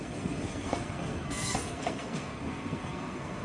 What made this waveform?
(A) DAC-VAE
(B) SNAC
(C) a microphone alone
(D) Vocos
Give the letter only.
B